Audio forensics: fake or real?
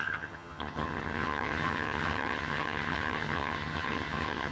fake